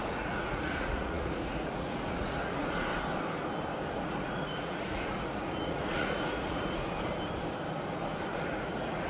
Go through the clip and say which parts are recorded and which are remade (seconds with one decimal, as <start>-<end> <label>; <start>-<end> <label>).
0.0-2.9 remade; 2.9-3.9 recorded; 3.9-6.9 remade; 6.9-8.3 recorded; 8.3-9.1 remade